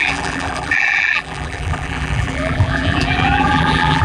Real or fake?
fake